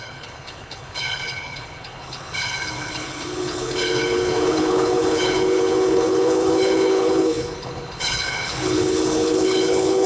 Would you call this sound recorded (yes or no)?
no